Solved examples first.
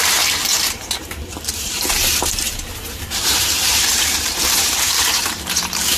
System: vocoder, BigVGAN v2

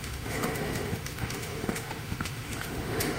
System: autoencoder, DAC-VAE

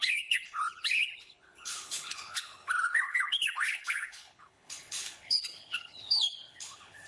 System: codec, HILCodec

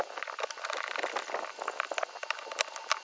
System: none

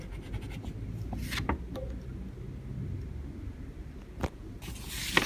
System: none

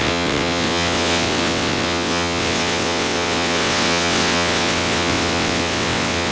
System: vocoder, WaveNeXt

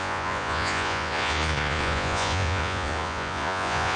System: vocoder, Vocos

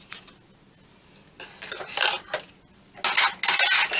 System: none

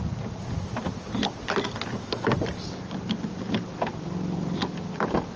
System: none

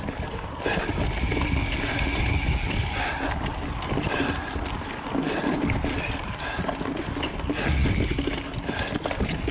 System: none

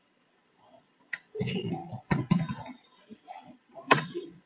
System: vocoder, Vocos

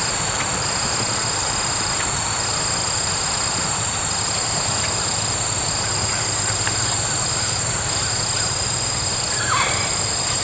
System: vocoder, BigVGAN v2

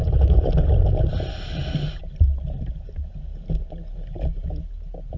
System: none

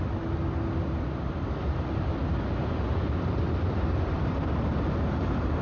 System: none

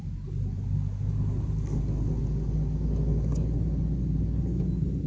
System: none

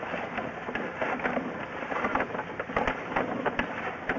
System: none